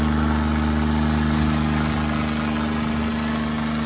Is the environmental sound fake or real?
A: real